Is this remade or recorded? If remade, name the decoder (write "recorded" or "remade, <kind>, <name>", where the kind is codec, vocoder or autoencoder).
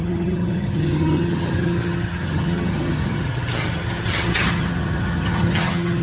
remade, vocoder, HiFi-GAN